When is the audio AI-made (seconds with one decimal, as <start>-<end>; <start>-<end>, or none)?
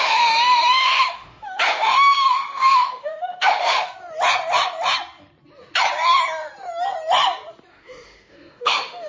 0.0-3.9; 7.7-9.1